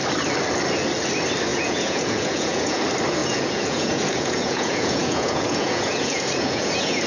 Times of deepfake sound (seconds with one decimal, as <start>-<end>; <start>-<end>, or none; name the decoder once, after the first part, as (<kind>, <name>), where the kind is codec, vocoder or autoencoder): 1.5-2.8 (vocoder, Vocos); 3.2-7.1